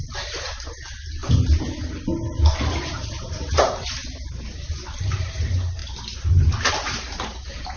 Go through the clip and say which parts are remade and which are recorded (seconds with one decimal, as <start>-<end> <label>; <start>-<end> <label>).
0.0-1.2 remade; 1.2-2.8 recorded; 2.8-4.0 remade; 4.0-5.2 recorded; 5.2-5.8 remade; 5.8-6.7 recorded; 6.7-7.8 remade